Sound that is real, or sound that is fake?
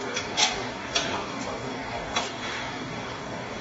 fake